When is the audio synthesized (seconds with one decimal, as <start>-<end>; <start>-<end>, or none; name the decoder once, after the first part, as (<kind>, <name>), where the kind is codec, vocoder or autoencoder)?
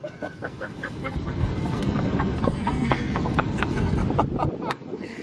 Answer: 0.0-4.0 (codec, SNAC); 4.7-5.2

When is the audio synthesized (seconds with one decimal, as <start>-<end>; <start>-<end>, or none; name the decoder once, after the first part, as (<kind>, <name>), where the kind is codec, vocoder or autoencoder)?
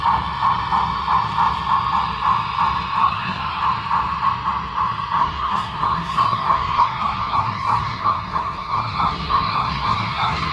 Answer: 3.0-3.6 (codec, SNAC); 5.2-10.5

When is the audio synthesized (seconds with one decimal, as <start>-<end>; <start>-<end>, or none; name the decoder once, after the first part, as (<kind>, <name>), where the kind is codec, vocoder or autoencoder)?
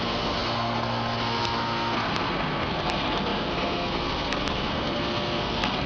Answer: 0.0-5.9 (codec, SNAC)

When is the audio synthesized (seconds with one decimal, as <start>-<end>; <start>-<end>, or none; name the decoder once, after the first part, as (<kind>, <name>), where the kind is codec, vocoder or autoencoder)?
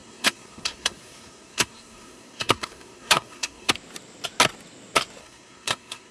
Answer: 0.0-3.7 (codec, SNAC); 5.2-6.1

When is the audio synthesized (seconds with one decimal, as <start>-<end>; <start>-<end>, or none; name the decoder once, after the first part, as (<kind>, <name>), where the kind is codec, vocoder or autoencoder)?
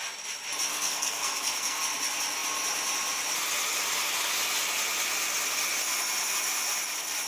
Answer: 0.7-1.8 (codec, SNAC)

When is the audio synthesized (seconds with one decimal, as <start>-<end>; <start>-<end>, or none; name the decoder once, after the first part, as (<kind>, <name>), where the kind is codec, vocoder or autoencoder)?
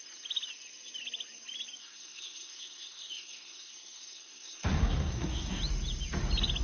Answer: 1.8-5.6 (codec, SNAC)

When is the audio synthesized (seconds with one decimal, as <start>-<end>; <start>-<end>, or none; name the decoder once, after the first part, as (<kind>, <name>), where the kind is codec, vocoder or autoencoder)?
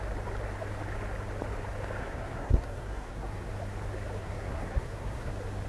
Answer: 2.0-3.5 (codec, SNAC); 4.2-5.3